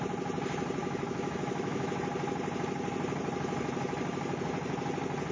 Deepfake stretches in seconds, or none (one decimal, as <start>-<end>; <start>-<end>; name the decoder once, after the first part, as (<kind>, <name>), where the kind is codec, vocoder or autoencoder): 0.8-2.0 (autoencoder, DAC-VAE)